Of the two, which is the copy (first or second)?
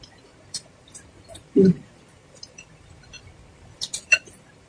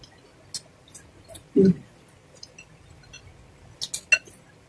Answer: first